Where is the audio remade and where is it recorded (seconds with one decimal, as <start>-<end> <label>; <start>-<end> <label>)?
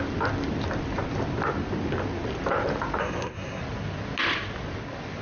0.0-3.0 recorded; 3.0-3.6 remade; 3.6-5.2 recorded